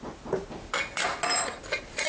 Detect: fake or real real